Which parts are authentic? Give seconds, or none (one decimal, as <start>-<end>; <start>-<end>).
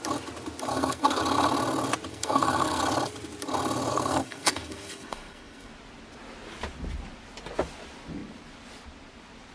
0.0-0.7; 1.2-2.1; 2.8-3.9; 5.7-9.5